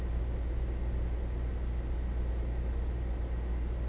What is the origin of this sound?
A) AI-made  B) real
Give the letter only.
B